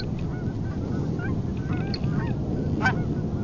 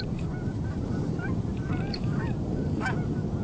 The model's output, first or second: second